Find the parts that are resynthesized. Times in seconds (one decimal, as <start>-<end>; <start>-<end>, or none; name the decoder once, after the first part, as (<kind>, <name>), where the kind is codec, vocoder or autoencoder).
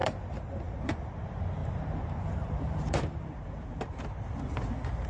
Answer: 0.0-1.1 (vocoder, BigVGAN v2); 1.6-3.9